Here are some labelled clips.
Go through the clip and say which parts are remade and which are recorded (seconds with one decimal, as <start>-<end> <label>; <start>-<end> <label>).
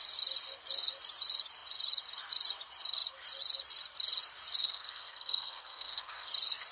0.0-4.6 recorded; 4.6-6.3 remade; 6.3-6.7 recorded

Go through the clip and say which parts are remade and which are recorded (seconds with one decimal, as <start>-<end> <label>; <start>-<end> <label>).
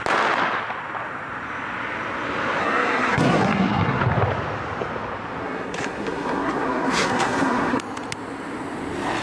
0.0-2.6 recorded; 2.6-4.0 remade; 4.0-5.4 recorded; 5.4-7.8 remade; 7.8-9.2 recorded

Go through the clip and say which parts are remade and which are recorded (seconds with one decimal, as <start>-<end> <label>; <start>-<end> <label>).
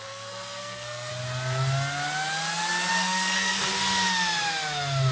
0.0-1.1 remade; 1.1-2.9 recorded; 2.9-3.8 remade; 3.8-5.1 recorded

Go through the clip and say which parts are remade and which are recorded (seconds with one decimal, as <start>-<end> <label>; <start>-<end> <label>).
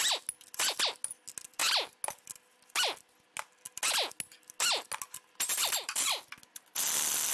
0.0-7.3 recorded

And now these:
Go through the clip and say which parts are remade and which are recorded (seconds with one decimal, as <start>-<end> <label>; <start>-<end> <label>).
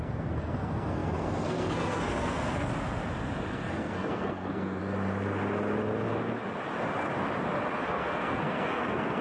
0.0-2.7 remade; 2.7-3.5 recorded; 3.5-4.8 remade; 4.8-7.8 recorded; 7.8-9.2 remade